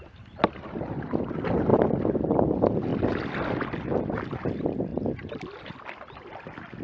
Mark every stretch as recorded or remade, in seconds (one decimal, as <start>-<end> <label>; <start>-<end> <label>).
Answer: 0.0-6.8 recorded